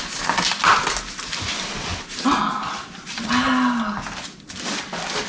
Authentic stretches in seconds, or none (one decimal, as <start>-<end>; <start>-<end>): 0.0-5.3